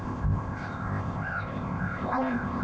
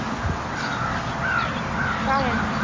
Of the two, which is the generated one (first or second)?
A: first